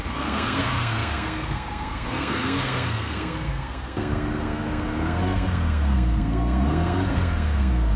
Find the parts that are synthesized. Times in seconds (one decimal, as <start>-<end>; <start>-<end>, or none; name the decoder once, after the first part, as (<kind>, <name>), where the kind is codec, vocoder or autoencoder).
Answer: 0.0-8.0 (codec, SNAC)